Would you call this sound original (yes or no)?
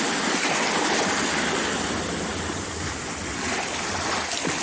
yes